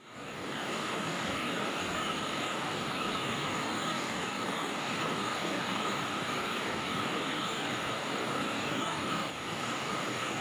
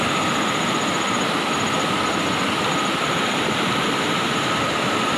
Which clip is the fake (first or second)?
first